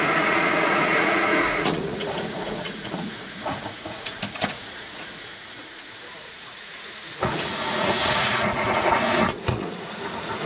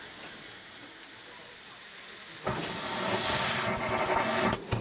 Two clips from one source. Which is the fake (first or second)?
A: first